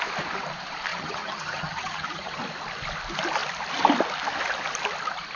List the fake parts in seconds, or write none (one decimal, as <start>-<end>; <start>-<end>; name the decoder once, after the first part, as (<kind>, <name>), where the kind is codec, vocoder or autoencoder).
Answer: 0.9-2.4 (vocoder, HiFi-GAN)